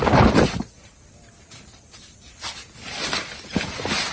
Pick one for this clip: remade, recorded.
recorded